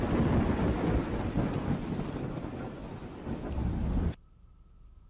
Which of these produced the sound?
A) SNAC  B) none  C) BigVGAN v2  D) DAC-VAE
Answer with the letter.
B